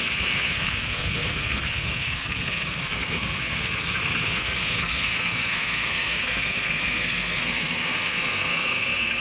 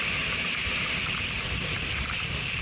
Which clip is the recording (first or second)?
second